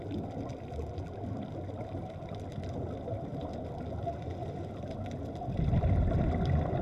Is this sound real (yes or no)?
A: yes